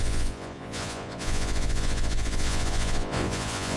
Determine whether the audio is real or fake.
fake